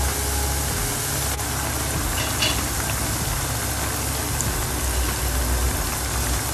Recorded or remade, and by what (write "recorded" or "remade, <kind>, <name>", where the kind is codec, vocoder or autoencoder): recorded